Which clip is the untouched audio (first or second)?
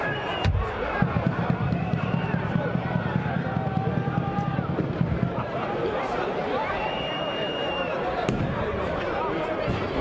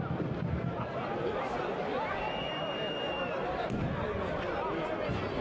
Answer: second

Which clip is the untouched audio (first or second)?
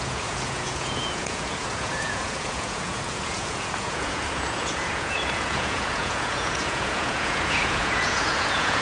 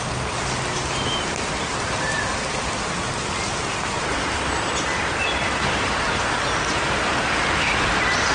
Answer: second